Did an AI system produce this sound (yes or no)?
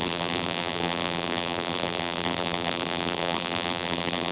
yes